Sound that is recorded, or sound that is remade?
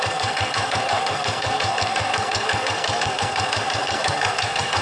remade